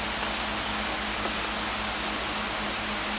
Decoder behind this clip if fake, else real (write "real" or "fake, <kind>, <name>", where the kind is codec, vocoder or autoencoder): real